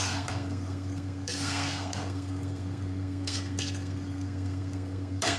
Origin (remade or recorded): remade